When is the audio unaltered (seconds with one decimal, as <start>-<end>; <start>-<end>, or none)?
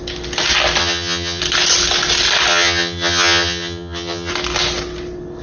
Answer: 0.0-0.8; 1.4-2.5; 4.3-5.4